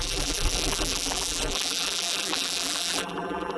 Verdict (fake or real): fake